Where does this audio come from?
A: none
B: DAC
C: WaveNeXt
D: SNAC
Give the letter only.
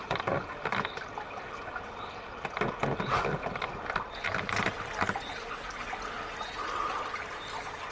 A